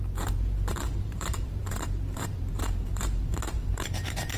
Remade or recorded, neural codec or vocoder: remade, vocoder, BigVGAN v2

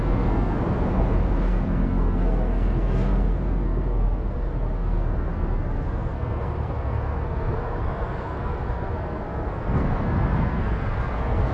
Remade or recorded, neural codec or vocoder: remade, codec, SNAC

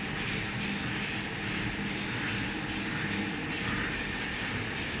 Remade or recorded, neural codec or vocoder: recorded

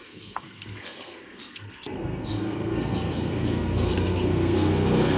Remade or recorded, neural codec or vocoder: remade, codec, SNAC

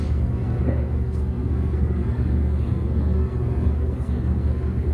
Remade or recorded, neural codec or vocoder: remade, codec, SNAC